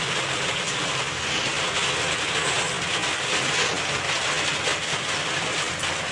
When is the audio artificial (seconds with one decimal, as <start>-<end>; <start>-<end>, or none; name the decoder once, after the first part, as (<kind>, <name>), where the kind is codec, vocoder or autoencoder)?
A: none